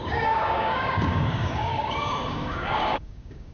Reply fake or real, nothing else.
fake